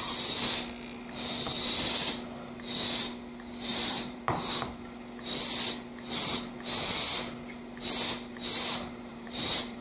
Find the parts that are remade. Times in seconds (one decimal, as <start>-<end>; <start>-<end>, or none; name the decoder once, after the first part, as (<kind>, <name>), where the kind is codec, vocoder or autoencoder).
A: 3.7-4.8 (vocoder, BigVGAN v2); 9.1-9.8